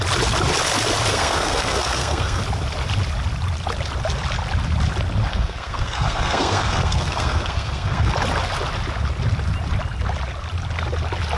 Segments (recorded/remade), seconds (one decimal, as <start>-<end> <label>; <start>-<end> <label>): 0.0-1.1 recorded; 1.1-2.4 remade; 2.4-5.3 recorded; 5.3-8.1 remade; 8.1-11.4 recorded